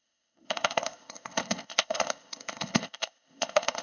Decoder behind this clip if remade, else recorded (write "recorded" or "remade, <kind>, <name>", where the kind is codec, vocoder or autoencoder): remade, codec, ZipCodec